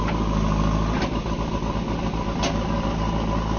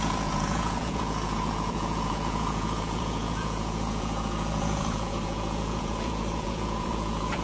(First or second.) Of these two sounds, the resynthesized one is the second